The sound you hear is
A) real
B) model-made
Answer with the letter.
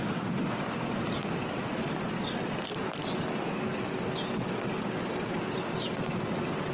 A